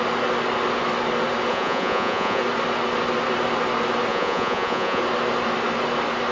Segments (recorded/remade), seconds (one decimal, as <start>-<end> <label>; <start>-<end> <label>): 0.0-1.5 recorded; 1.5-2.4 remade; 2.4-4.1 recorded; 4.1-5.0 remade; 5.0-6.3 recorded